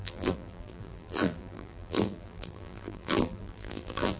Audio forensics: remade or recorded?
remade